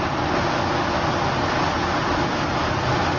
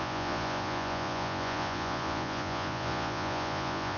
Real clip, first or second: first